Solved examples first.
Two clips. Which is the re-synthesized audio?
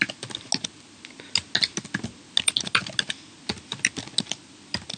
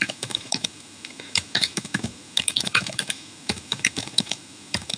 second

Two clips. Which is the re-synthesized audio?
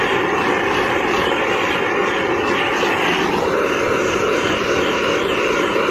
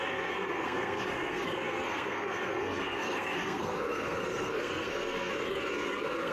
second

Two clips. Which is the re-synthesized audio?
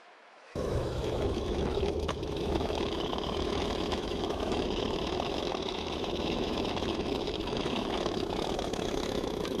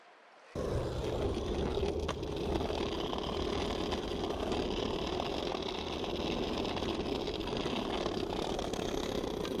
first